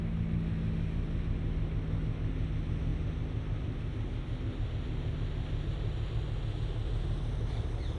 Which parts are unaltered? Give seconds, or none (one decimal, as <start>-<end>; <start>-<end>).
0.0-8.0